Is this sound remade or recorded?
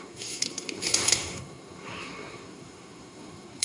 remade